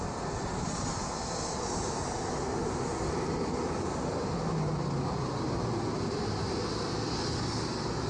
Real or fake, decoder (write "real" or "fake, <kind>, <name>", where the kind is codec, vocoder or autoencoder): real